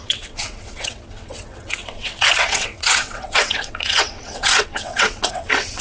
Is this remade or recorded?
remade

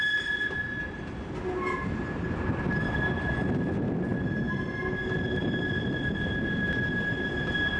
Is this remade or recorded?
recorded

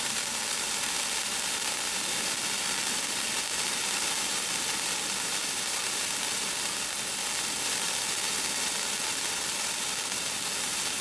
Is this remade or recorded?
recorded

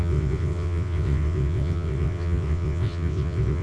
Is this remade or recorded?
remade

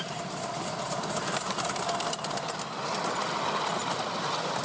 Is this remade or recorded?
recorded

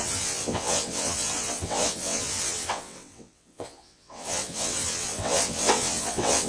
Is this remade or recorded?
remade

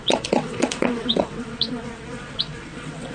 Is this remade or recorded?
remade